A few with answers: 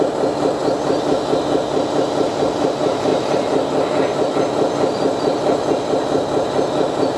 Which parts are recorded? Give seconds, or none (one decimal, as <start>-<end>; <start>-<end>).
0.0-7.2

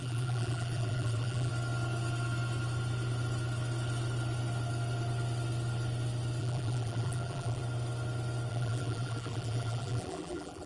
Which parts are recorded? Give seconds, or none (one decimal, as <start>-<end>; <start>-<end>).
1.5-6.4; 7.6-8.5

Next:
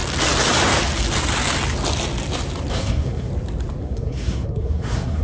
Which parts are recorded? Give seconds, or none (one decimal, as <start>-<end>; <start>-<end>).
0.0-2.7; 3.3-3.8